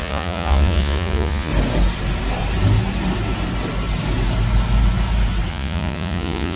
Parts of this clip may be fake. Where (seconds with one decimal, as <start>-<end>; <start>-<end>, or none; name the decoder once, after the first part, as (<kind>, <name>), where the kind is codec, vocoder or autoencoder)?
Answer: 0.0-1.5 (vocoder, Vocos); 5.5-6.6